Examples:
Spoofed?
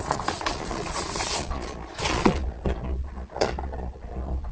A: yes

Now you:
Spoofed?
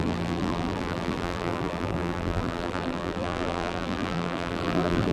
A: yes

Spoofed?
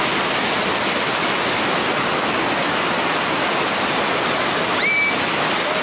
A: no